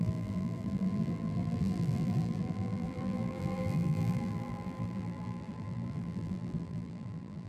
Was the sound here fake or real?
fake